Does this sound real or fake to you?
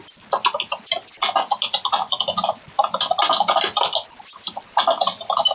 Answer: real